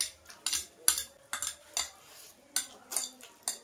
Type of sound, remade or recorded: recorded